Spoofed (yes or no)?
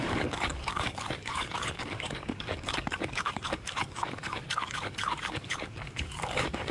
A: yes